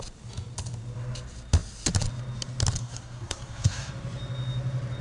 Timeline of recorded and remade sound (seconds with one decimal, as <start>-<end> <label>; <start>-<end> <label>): 0.0-2.8 recorded; 2.8-3.9 remade; 3.9-5.0 recorded